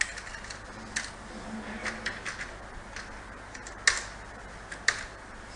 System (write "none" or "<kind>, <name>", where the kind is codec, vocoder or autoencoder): none